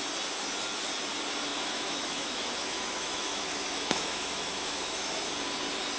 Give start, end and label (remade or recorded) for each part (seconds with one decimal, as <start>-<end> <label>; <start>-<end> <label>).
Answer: 0.0-1.5 recorded; 1.5-5.1 remade; 5.1-6.0 recorded